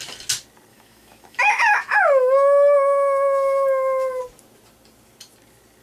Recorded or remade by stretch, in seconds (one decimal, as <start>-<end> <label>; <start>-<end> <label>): 0.0-0.7 recorded; 0.7-4.2 remade; 4.2-5.8 recorded